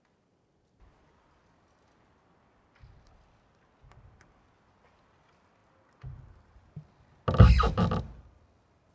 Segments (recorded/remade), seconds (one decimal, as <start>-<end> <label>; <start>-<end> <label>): 0.0-8.9 recorded